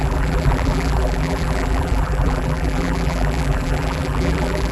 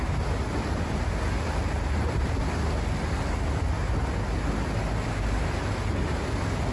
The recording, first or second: second